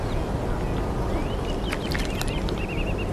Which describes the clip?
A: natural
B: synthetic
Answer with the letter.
A